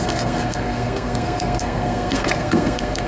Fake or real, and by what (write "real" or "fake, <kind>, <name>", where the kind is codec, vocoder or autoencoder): fake, codec, SNAC